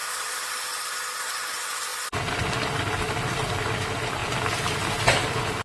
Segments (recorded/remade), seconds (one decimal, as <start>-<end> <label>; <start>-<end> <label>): 0.0-1.4 remade; 1.4-5.6 recorded